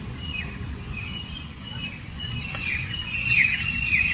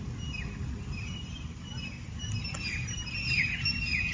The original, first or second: second